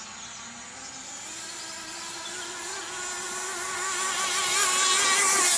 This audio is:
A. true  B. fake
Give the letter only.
A